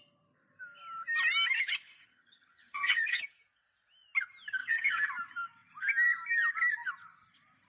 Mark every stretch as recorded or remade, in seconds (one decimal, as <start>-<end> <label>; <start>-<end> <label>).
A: 0.0-2.0 recorded; 2.0-3.2 remade; 3.2-4.6 recorded; 4.6-5.1 remade; 5.1-7.7 recorded